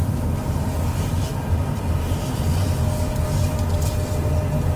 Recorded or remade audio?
recorded